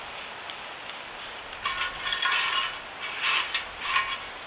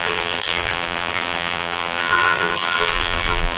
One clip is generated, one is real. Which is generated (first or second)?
second